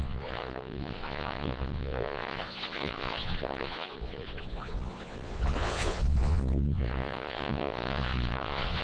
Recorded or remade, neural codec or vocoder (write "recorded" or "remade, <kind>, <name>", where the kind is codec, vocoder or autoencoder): remade, vocoder, Vocos